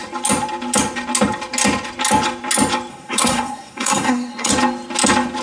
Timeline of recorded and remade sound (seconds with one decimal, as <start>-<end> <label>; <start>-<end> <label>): 0.0-2.9 recorded; 2.9-4.5 remade; 4.5-5.4 recorded